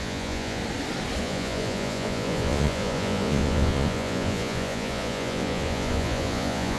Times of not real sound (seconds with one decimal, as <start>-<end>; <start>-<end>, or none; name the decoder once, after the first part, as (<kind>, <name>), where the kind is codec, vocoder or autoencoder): 0.0-0.6 (vocoder, Vocos); 1.2-6.8